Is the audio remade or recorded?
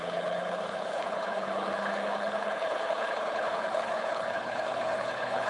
remade